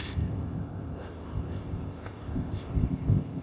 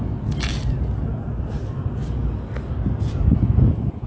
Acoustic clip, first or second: second